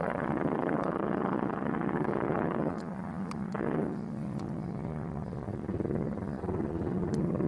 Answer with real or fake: fake